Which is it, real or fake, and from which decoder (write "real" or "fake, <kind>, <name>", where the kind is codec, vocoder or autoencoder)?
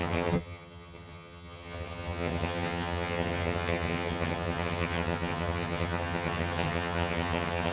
fake, vocoder, HiFi-GAN